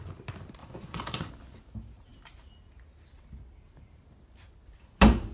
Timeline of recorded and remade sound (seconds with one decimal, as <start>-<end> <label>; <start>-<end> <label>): 0.0-0.6 recorded; 0.6-1.3 remade; 1.3-5.3 recorded